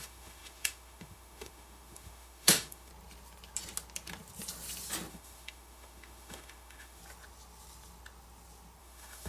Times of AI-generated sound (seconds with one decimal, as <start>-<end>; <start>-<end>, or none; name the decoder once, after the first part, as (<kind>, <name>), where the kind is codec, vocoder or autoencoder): 0.0-2.9 (autoencoder, DAC-VAE); 5.1-7.0; 8.8-9.3